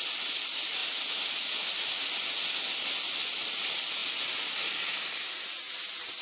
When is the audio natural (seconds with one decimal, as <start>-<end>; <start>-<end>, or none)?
0.0-6.2

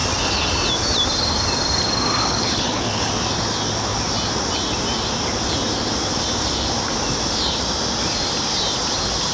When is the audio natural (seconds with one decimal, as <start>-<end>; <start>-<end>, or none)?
0.0-2.2; 3.1-9.3